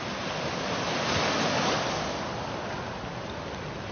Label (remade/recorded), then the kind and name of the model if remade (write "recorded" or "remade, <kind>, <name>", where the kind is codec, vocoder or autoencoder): recorded